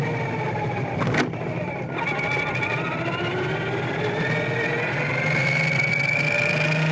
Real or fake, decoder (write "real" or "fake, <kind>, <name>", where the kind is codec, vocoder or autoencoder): real